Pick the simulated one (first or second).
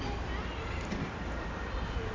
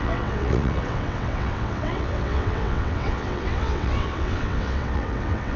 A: second